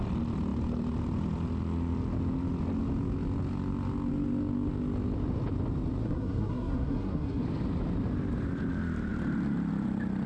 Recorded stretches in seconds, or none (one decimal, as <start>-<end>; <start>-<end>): 0.0-6.0; 7.4-10.3